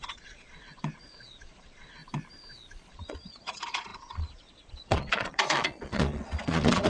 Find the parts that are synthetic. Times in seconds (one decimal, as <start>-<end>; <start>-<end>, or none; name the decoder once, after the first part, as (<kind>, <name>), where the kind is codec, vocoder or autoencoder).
0.0-2.0 (vocoder, Vocos); 2.9-6.9